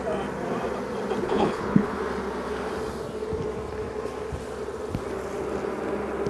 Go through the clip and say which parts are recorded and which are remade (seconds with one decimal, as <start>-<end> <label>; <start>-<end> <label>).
0.0-1.2 recorded; 1.2-2.0 remade; 2.0-6.3 recorded